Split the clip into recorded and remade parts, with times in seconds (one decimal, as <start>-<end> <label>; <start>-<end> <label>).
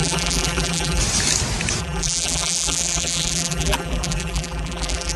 0.0-1.0 remade; 1.0-1.8 recorded; 1.8-5.2 remade